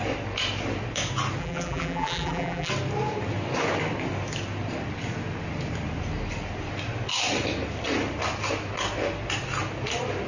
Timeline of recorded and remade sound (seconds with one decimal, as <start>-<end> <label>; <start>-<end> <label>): 0.0-1.4 recorded; 1.4-2.7 remade; 2.7-10.3 recorded